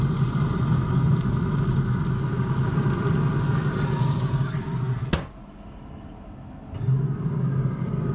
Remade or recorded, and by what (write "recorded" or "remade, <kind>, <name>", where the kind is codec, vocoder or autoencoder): recorded